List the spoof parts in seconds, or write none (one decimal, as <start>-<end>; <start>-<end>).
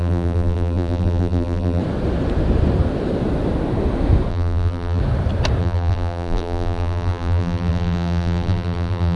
0.0-1.8; 4.3-5.0; 5.6-9.2